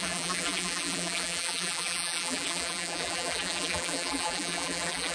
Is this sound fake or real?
fake